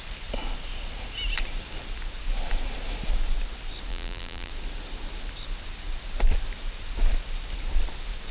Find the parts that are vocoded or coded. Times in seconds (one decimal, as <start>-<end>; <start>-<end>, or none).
3.9-4.5